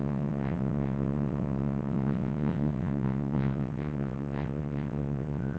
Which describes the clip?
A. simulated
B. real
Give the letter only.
A